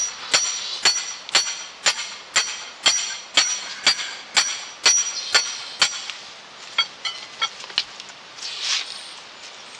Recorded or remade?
recorded